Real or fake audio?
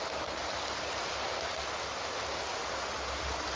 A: real